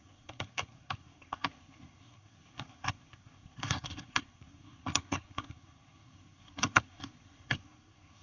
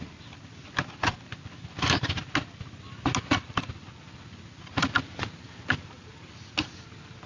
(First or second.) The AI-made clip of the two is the first